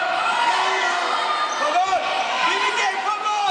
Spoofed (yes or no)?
no